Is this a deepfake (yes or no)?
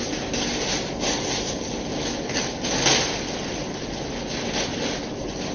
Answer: no